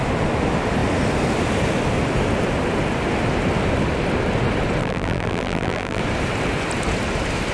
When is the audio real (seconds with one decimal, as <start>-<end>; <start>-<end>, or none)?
0.0-4.8; 6.0-7.5

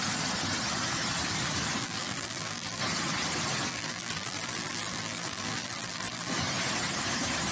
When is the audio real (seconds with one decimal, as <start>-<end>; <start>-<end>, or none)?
0.0-1.8; 2.8-3.7; 6.3-7.5

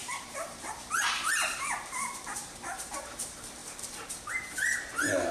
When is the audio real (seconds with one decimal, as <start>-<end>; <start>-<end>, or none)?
none

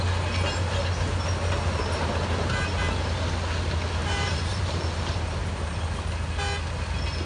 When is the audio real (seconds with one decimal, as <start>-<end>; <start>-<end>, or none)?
0.0-4.0; 5.7-7.3

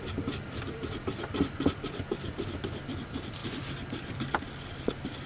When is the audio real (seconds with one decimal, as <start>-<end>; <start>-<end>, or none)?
0.0-5.3